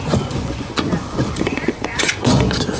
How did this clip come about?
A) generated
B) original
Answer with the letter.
A